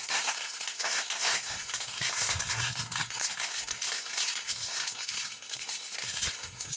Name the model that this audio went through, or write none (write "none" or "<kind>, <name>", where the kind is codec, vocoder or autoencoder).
codec, SNAC